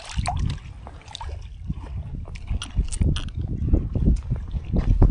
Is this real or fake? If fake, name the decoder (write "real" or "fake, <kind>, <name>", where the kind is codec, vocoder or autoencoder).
real